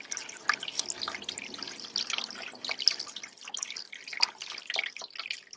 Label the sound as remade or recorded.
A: recorded